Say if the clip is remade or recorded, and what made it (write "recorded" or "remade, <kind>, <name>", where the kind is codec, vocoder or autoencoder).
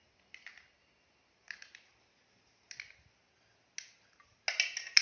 recorded